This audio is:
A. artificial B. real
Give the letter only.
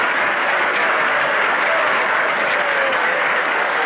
A